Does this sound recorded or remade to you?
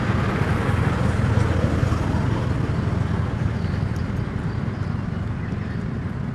recorded